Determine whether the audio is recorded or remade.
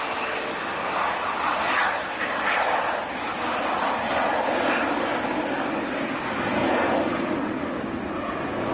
recorded